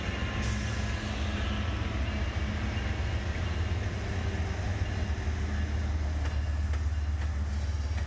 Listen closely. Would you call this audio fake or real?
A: real